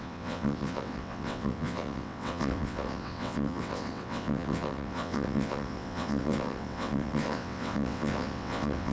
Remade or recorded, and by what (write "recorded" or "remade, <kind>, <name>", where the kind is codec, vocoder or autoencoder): remade, vocoder, WaveNeXt